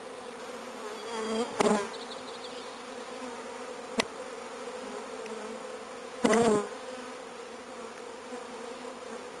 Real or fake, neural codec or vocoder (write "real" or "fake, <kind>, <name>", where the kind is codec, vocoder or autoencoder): real